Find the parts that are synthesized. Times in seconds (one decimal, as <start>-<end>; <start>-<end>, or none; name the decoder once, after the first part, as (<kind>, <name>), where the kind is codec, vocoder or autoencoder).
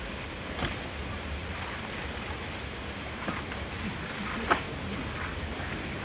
none